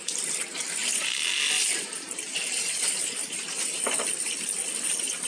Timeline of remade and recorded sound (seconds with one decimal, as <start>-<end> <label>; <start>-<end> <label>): 0.0-5.3 recorded

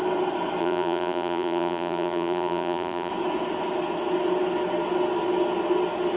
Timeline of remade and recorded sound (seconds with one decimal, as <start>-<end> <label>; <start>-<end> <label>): 0.0-0.6 recorded; 0.6-3.1 remade; 3.1-6.2 recorded

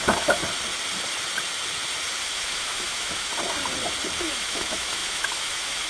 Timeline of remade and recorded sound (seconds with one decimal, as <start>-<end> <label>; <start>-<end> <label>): 0.0-0.4 remade; 0.4-2.2 recorded; 2.2-3.3 remade; 3.3-4.2 recorded; 4.2-5.9 remade

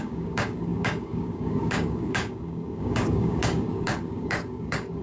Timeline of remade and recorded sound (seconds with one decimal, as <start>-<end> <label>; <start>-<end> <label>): 0.0-5.0 remade

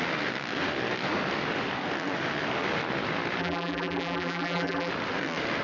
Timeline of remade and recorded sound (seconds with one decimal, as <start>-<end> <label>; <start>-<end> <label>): 0.0-3.4 recorded; 3.4-4.9 remade; 4.9-5.6 recorded

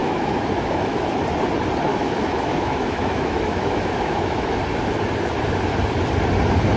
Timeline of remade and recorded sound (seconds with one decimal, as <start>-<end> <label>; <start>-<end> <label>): 0.0-1.1 remade; 1.1-1.9 recorded; 1.9-4.6 remade; 4.6-6.8 recorded